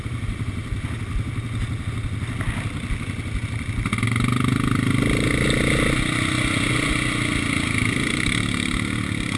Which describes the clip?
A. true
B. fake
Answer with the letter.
A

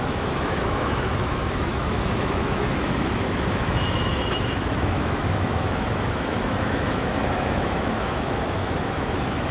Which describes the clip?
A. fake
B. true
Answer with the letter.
A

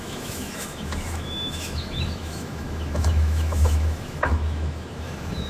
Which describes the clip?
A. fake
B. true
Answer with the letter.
A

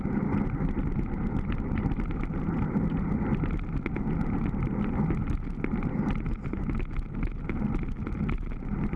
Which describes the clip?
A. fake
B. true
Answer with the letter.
B